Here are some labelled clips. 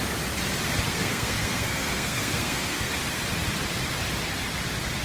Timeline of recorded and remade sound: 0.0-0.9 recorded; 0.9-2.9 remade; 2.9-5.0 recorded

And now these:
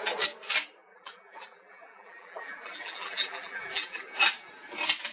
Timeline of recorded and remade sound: 0.0-0.9 recorded; 0.9-4.0 remade; 4.0-5.1 recorded

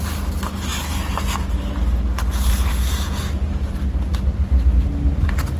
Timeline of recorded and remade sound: 0.0-5.6 recorded